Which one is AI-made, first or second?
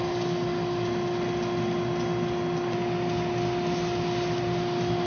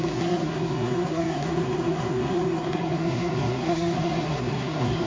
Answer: second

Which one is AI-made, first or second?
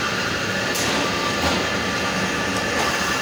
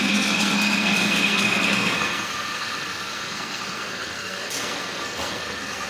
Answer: second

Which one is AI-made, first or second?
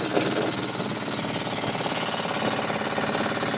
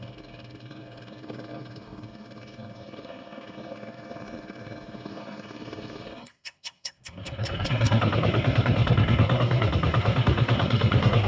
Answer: second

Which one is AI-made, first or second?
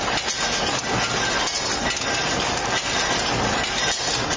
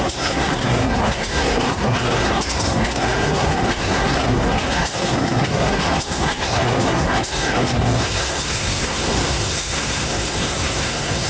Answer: second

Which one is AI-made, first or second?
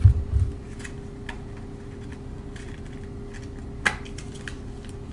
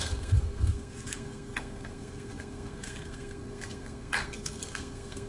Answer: second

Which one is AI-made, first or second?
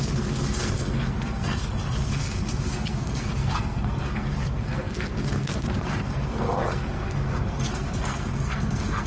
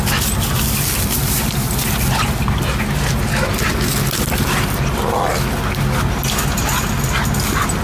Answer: first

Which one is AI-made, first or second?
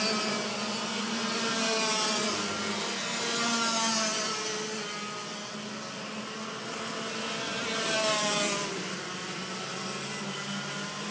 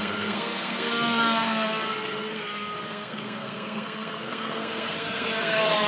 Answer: second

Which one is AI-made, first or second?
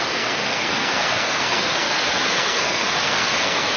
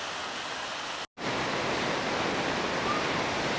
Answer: first